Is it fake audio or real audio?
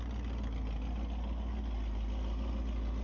real